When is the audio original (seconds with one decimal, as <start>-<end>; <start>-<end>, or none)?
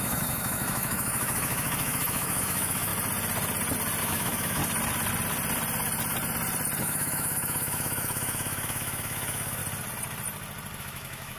2.9-4.0; 4.6-6.8; 9.6-10.8